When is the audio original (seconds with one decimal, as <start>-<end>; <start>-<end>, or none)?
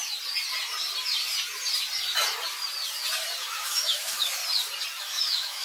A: 0.0-3.4; 4.4-5.0